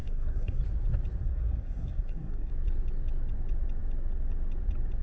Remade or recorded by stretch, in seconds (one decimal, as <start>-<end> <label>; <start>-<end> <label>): 0.0-0.6 remade; 0.6-1.2 recorded; 1.2-2.5 remade; 2.5-5.0 recorded